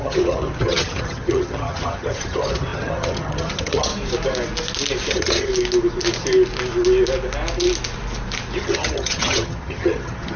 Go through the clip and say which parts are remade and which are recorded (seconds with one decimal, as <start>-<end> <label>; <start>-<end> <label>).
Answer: 0.0-3.9 remade; 3.9-5.1 recorded; 5.1-5.5 remade; 5.5-8.6 recorded; 8.6-10.4 remade